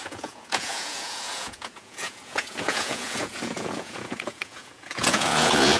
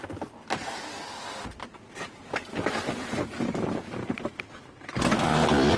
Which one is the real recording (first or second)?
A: second